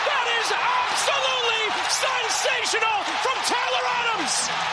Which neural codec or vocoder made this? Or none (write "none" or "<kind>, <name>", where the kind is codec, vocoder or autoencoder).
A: none